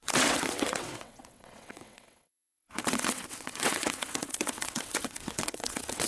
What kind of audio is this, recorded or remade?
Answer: remade